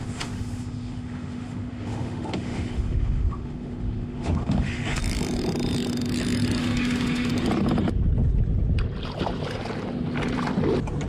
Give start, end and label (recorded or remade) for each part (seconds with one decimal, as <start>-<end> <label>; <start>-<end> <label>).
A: 0.0-5.0 remade; 5.0-6.6 recorded; 6.6-7.3 remade; 7.3-11.1 recorded